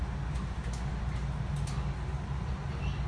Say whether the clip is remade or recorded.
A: recorded